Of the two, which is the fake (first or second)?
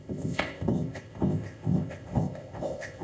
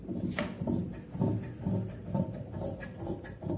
first